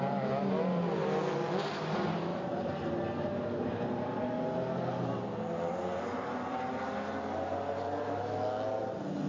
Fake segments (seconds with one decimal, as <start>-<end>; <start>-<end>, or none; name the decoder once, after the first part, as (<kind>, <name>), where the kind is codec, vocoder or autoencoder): 2.3-4.2 (vocoder, BigVGAN v2)